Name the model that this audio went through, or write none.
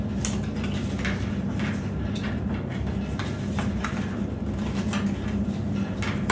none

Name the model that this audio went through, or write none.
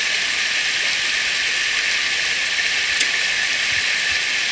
none